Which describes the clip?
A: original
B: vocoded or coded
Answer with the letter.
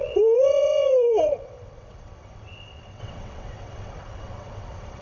B